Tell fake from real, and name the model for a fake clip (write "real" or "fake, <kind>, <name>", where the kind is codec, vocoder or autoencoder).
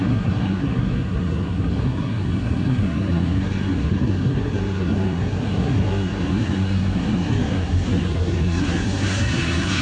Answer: fake, codec, SNAC